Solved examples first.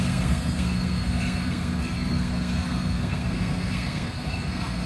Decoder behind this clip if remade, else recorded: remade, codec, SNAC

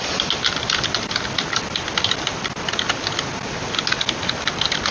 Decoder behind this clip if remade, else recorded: recorded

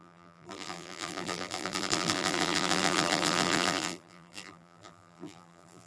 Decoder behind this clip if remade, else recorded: remade, vocoder, BigVGAN v2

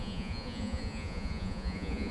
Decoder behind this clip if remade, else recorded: remade, vocoder, Vocos